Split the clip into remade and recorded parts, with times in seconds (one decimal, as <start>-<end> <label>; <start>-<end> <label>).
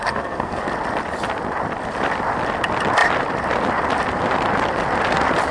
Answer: 0.0-0.6 remade; 0.6-5.5 recorded